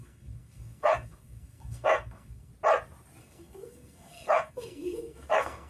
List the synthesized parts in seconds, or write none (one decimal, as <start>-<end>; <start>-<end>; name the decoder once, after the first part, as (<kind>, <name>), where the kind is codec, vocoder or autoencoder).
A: 0.0-2.5 (codec, SNAC); 3.2-5.7